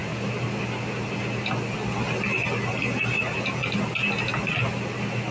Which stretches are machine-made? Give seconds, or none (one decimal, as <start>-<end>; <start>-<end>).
none